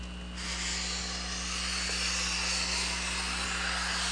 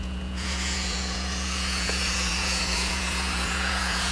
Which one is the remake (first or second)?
second